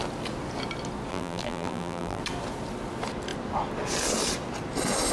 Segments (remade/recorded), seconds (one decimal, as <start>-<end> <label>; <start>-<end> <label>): 0.0-1.1 recorded; 1.1-2.2 remade; 2.2-5.1 recorded